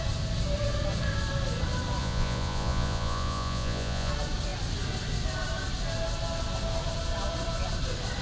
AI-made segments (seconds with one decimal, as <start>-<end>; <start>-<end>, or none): 2.0-4.1